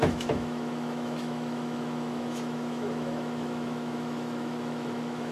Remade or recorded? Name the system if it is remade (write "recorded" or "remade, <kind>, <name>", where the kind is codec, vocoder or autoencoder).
remade, autoencoder, DAC-VAE